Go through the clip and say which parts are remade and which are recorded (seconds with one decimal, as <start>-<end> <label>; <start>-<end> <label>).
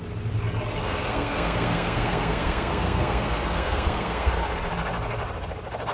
0.0-0.8 recorded; 0.8-4.3 remade; 4.3-5.9 recorded